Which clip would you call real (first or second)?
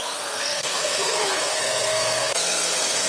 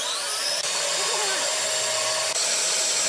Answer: second